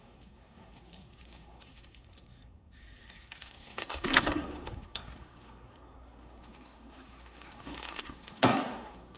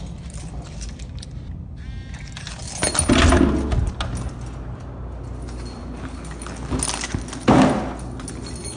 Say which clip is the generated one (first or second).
first